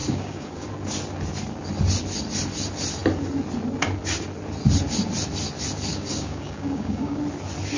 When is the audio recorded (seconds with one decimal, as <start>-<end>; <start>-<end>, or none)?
0.7-5.9; 7.2-7.8